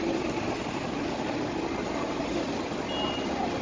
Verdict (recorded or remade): recorded